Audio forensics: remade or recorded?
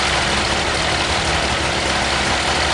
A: recorded